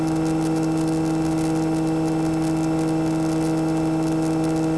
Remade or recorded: recorded